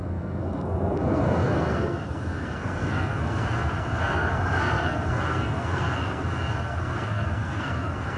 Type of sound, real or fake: fake